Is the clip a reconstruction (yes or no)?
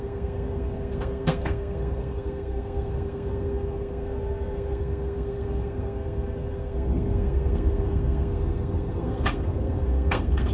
yes